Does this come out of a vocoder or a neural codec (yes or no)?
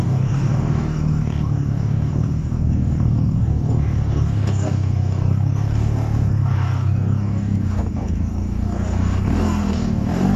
yes